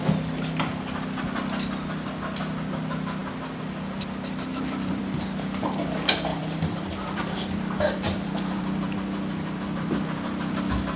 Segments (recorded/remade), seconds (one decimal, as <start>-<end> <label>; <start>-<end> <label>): 0.0-4.5 recorded; 4.5-5.0 remade; 5.0-6.3 recorded; 6.3-10.6 remade; 10.6-11.0 recorded